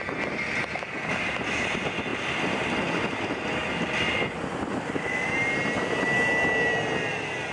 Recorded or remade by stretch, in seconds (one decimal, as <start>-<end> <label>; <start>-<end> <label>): 0.0-7.5 recorded